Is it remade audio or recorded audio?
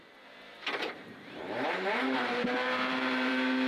remade